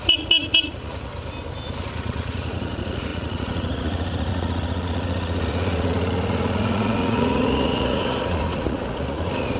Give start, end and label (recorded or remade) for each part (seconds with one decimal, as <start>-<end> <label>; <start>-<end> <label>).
0.0-1.1 remade; 1.1-1.9 recorded; 1.9-9.6 remade